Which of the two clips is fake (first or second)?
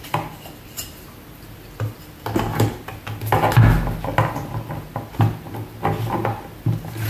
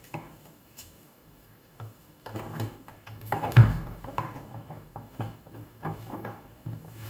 second